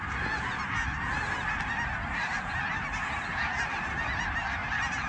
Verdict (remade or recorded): recorded